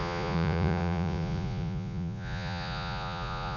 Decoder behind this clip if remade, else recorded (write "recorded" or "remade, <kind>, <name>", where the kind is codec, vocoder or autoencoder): remade, vocoder, Vocos